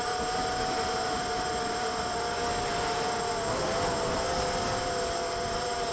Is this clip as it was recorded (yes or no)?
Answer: yes